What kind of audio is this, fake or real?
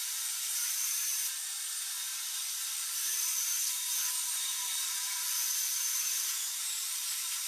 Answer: fake